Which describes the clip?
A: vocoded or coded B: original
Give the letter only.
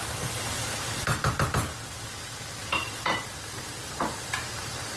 B